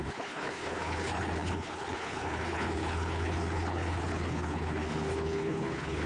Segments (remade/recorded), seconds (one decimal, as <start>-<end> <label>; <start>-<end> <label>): 0.0-6.1 remade